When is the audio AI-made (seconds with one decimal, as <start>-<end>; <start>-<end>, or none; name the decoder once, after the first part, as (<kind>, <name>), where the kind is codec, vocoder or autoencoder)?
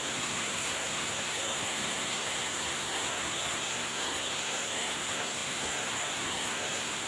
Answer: 0.0-7.1 (codec, SNAC)